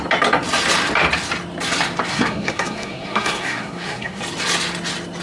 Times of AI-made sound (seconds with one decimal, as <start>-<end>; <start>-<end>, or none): 2.1-4.2